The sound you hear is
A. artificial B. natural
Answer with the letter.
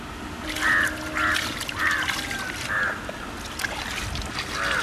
B